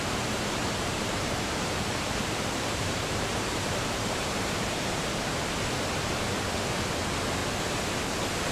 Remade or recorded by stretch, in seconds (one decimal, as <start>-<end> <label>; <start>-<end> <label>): 0.0-0.6 recorded; 0.6-5.1 remade; 5.1-8.5 recorded